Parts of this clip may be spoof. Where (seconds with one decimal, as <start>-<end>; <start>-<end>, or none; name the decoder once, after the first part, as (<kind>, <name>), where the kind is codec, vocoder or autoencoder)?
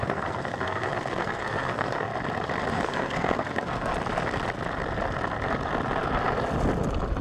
0.0-2.1 (codec, SNAC); 2.7-3.9